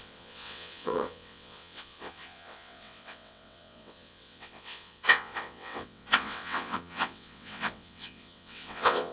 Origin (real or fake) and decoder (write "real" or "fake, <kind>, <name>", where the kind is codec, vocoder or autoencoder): fake, vocoder, WaveNeXt